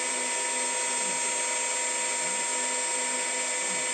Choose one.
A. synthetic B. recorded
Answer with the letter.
B